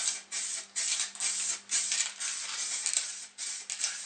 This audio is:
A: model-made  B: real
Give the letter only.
B